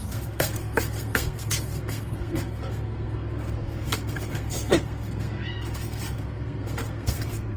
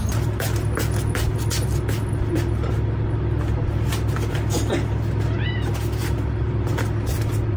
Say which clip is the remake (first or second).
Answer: first